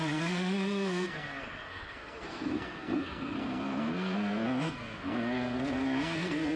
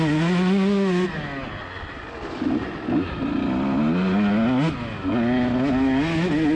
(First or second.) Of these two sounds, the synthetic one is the first